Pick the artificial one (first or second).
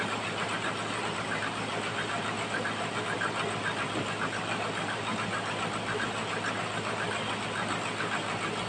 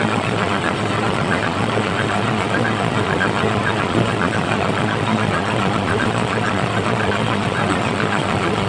second